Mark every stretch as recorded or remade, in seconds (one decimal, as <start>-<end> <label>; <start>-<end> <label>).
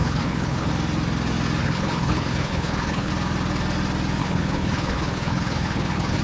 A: 0.0-0.7 remade; 0.7-1.6 recorded; 1.6-3.1 remade; 3.1-4.2 recorded; 4.2-6.2 remade